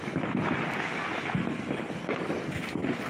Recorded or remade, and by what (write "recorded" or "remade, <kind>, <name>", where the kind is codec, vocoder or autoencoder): recorded